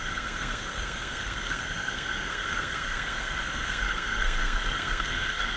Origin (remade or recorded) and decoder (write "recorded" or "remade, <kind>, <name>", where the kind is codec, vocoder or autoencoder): remade, codec, SNAC